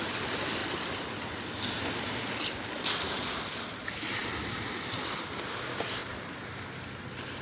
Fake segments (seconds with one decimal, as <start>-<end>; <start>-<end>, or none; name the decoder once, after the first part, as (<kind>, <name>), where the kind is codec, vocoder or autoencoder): none